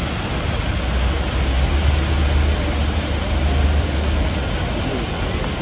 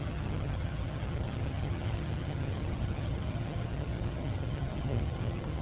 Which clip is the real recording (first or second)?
first